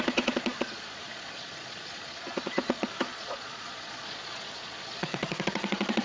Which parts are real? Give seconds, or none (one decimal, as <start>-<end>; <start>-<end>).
none